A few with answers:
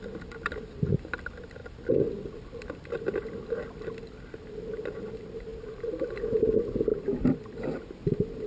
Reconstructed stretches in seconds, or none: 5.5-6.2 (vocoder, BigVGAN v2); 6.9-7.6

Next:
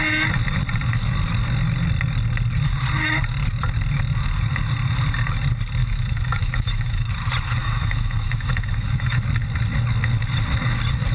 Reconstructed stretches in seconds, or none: 5.8-7.1 (autoencoder, DAC-VAE); 7.6-9.2

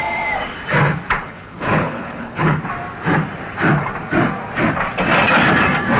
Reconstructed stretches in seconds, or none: 1.2-2.6 (codec, HILCodec)

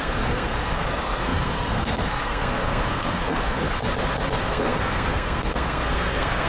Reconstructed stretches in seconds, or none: 0.0-3.8 (codec, SNAC); 4.5-6.5

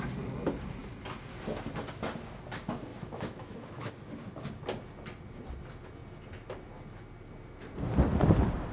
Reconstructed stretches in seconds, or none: 2.9-3.9 (autoencoder, DAC-VAE)